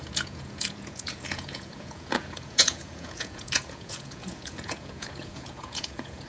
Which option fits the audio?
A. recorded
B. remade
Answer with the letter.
B